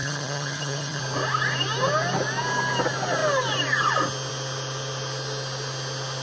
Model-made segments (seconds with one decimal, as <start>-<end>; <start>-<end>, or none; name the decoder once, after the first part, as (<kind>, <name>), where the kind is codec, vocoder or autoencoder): 0.0-1.0 (vocoder, HiFi-GAN)